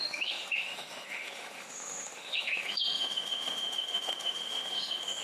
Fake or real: fake